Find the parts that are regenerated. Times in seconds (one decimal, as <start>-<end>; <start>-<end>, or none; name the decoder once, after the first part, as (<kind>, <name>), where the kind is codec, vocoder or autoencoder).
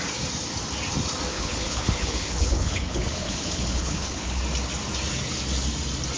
1.3-4.4 (codec, HILCodec)